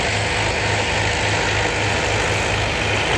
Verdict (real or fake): real